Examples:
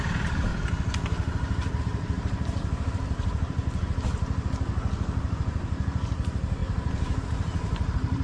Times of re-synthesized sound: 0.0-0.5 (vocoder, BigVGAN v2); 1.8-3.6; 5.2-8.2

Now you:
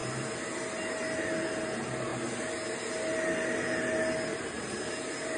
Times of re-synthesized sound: 4.3-4.9 (vocoder, BigVGAN v2)

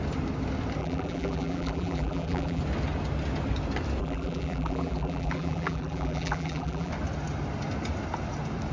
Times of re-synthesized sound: 0.8-2.6 (vocoder, BigVGAN v2); 4.0-6.9

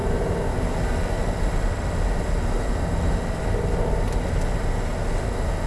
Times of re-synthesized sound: none

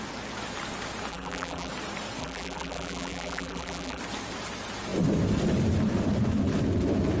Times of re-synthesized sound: 1.1-1.7 (vocoder, BigVGAN v2); 2.2-4.0